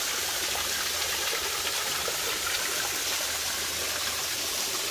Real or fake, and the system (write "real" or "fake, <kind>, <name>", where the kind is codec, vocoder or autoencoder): real